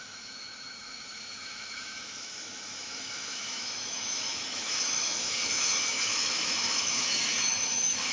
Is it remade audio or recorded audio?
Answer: remade